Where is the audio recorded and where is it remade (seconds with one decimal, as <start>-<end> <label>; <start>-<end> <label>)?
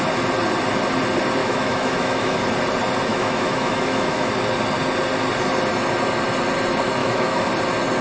0.0-1.4 recorded; 1.4-2.4 remade; 2.4-3.1 recorded; 3.1-4.3 remade; 4.3-7.0 recorded; 7.0-7.5 remade; 7.5-8.0 recorded